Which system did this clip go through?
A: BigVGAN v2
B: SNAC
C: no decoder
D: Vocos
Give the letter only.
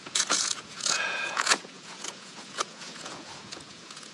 D